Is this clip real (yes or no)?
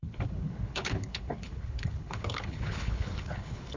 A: no